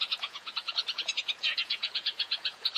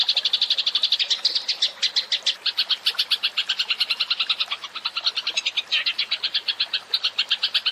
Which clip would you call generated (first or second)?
first